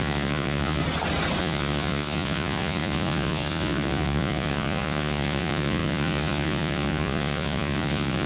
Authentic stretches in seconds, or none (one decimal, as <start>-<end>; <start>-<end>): 0.8-1.4